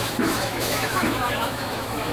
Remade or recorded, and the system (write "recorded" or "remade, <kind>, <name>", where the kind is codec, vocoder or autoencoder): remade, autoencoder, DAC-VAE